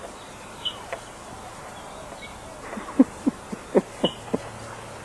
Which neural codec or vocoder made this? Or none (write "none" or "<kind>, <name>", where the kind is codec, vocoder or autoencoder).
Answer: none